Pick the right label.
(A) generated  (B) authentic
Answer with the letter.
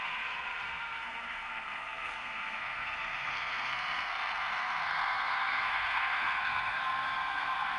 A